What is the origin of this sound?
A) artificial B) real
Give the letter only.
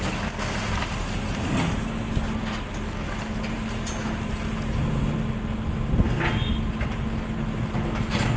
B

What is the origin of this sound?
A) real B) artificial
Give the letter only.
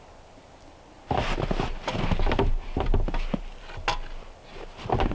A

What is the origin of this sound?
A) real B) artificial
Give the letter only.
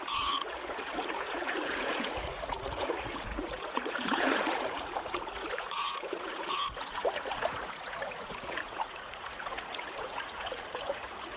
B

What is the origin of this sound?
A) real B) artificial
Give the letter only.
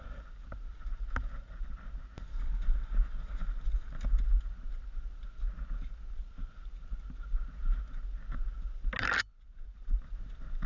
A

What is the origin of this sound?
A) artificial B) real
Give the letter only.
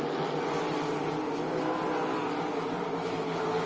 B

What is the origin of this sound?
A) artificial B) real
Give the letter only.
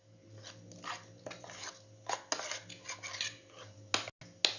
B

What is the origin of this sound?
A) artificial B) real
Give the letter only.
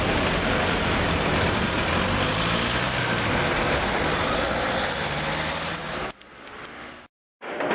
B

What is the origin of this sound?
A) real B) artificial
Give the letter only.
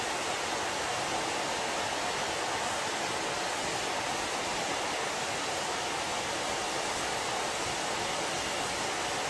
A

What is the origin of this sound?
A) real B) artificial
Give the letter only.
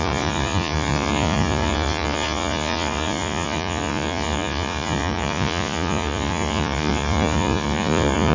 B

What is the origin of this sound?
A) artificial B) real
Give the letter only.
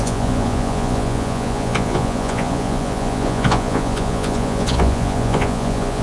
A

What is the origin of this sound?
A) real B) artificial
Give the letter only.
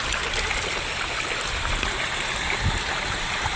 A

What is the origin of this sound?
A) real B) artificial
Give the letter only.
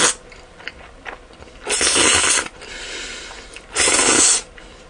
A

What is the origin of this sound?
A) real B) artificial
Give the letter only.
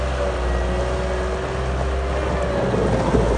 A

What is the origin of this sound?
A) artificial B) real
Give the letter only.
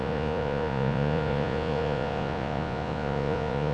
A